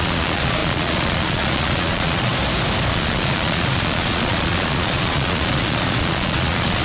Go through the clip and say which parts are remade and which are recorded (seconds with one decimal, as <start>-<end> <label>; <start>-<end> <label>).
0.0-2.3 remade; 2.3-2.9 recorded; 2.9-6.8 remade